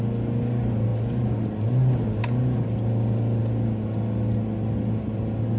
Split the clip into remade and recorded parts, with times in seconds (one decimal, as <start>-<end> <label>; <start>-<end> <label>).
0.0-5.6 recorded